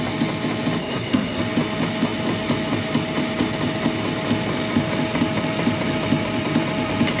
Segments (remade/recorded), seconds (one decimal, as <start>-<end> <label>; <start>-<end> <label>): 0.0-0.8 recorded; 0.8-1.4 remade; 1.4-7.2 recorded